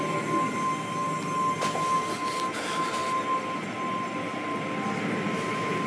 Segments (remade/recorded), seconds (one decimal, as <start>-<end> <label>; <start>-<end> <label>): 0.0-5.9 recorded